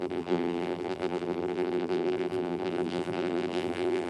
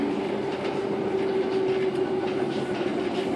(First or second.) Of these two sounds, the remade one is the first